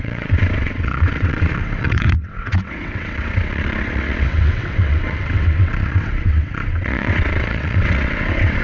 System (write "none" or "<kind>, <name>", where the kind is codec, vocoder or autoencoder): vocoder, WaveNeXt